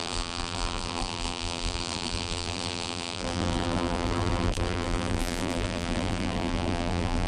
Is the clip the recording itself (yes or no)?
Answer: no